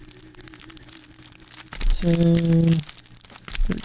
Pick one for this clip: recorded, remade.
recorded